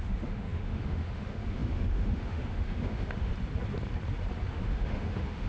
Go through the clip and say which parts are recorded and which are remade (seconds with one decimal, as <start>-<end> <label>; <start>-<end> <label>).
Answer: 0.0-3.3 remade; 3.3-4.5 recorded; 4.5-5.5 remade